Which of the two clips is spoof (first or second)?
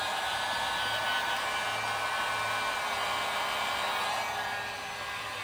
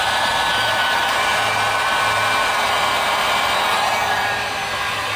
second